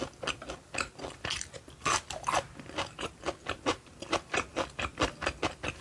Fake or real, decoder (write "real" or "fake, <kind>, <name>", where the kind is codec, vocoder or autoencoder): real